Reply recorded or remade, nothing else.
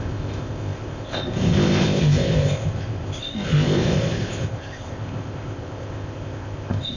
remade